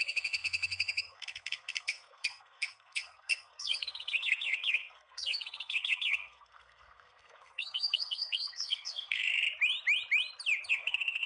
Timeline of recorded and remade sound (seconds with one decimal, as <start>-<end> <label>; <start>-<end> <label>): 0.0-9.3 remade; 9.3-10.7 recorded; 10.7-11.3 remade